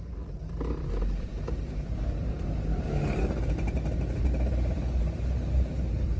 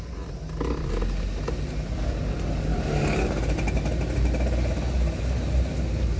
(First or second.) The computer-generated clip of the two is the first